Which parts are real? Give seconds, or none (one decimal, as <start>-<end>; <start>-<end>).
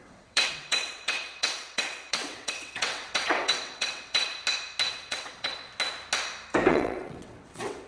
4.3-4.9; 5.7-6.7